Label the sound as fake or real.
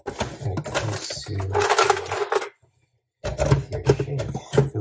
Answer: real